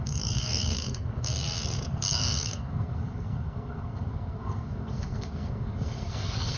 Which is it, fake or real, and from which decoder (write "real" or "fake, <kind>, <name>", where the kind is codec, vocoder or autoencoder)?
fake, codec, SNAC